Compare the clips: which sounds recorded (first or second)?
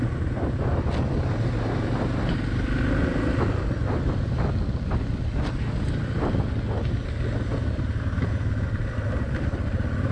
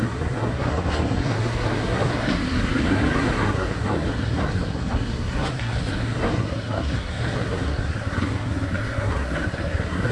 first